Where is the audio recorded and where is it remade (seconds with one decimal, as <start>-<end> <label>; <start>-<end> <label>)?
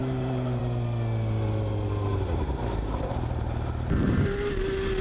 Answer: 0.0-0.6 remade; 0.6-2.1 recorded; 2.1-4.6 remade; 4.6-5.0 recorded